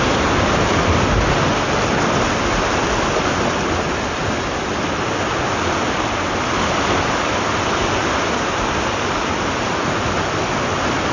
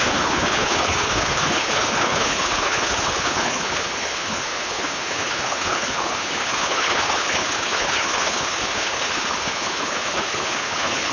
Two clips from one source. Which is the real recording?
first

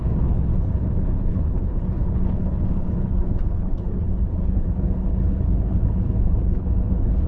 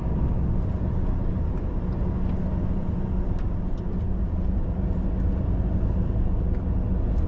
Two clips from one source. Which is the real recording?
second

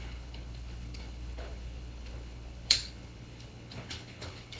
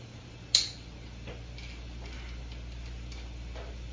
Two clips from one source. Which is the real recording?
second